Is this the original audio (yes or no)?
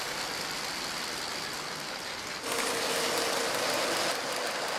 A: yes